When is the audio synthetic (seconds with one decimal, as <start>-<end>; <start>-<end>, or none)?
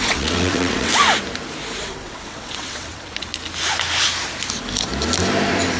0.0-0.9; 1.8-3.3